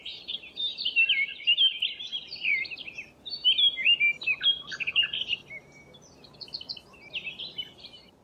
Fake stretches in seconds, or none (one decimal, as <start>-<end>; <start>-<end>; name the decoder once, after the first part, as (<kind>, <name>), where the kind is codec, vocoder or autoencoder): 0.0-1.3 (vocoder, BigVGAN v2); 2.0-5.4; 7.3-8.2